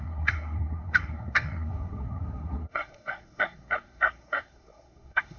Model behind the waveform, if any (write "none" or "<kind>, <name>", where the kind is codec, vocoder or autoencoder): codec, SNAC